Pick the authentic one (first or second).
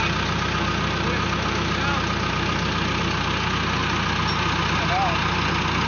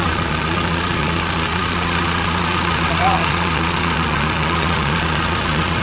first